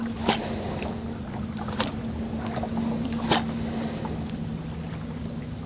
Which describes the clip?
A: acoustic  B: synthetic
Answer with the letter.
A